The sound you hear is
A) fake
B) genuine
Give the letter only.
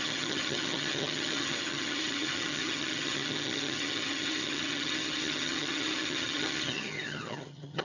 A